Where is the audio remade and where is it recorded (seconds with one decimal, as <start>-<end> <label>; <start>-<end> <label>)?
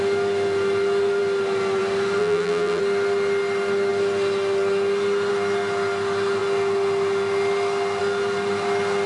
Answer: 0.0-2.2 recorded; 2.2-2.8 remade; 2.8-9.1 recorded